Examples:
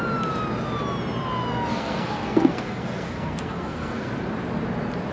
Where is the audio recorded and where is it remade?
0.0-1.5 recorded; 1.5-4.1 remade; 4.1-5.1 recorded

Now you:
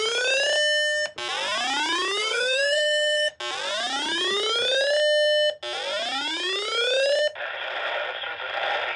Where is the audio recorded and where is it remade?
0.0-2.2 recorded; 2.2-3.3 remade; 3.3-9.0 recorded

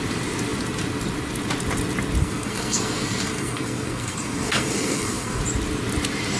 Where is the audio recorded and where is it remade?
0.0-2.2 recorded; 2.2-5.4 remade; 5.4-6.4 recorded

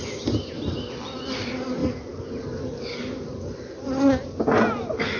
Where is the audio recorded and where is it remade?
0.0-5.2 recorded

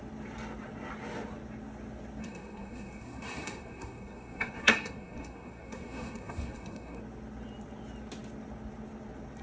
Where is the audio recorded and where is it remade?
0.0-2.2 recorded; 2.2-7.0 remade; 7.0-9.4 recorded

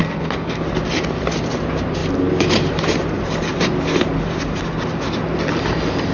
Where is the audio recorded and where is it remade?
0.0-0.6 remade; 0.6-6.1 recorded

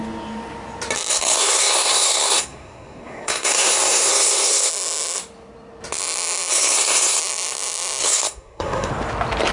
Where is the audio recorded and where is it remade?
0.0-1.1 recorded; 1.1-4.7 remade; 4.7-6.5 recorded; 6.5-7.2 remade; 7.2-8.0 recorded; 8.0-8.9 remade; 8.9-9.5 recorded

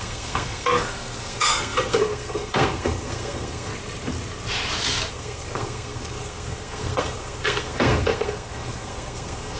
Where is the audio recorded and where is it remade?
0.0-3.7 remade; 3.7-5.1 recorded; 5.1-9.6 remade